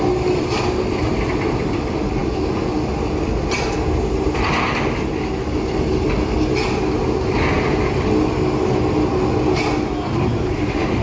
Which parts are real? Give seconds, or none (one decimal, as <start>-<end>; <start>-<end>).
0.0-11.0